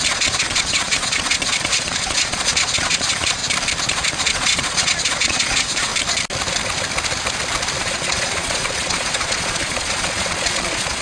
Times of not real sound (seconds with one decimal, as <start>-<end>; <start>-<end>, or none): 0.0-3.4; 3.9-5.9; 7.8-11.0